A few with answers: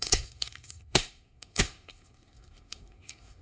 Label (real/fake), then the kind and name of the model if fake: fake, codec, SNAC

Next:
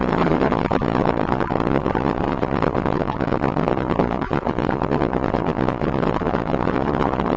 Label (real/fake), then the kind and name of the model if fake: fake, vocoder, Vocos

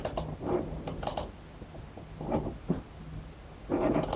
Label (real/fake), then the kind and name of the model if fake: real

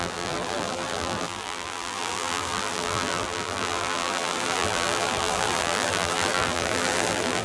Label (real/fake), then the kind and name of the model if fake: fake, vocoder, BigVGAN v2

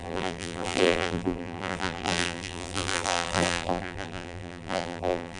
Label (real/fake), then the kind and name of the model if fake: fake, vocoder, BigVGAN v2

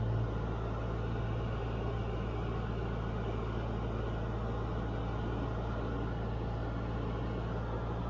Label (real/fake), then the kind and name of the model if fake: real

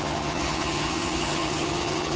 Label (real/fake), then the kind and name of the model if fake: fake, vocoder, HiFi-GAN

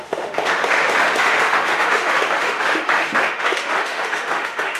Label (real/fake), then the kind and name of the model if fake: fake, autoencoder, DAC-VAE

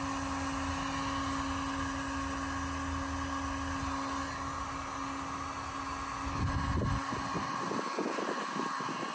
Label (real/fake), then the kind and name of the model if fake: real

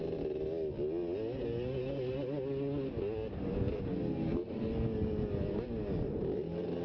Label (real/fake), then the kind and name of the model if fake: real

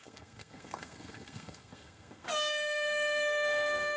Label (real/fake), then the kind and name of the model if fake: fake, codec, SNAC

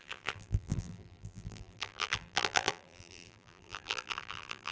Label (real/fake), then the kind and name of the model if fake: fake, vocoder, BigVGAN v2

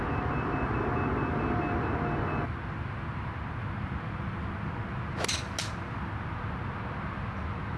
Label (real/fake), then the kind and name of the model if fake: real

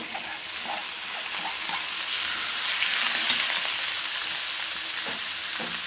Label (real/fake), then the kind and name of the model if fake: real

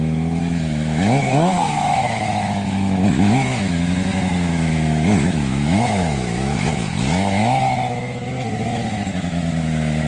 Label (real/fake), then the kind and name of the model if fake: fake, autoencoder, DAC-VAE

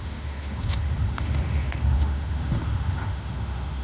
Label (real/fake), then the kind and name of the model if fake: fake, autoencoder, DAC-VAE